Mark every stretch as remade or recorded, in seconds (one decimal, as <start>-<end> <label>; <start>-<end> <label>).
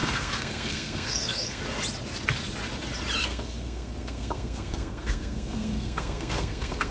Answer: 0.0-1.6 remade; 1.6-3.2 recorded; 3.2-6.9 remade